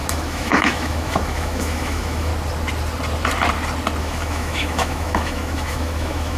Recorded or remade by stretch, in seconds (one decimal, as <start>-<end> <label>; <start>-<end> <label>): 0.0-2.3 remade; 2.3-4.0 recorded; 4.0-6.4 remade